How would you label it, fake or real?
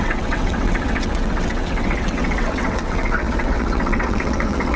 fake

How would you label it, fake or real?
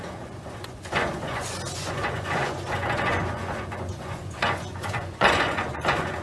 fake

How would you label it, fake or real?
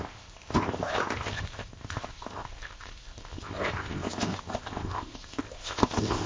fake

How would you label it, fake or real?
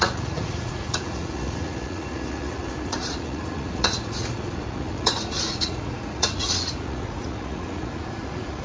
fake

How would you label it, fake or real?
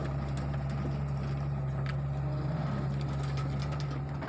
real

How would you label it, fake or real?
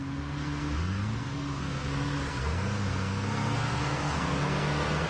fake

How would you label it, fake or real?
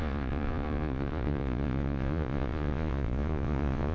fake